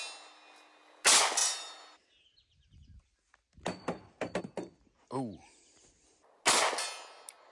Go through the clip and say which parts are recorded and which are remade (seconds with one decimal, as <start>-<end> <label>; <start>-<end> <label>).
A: 0.0-7.5 recorded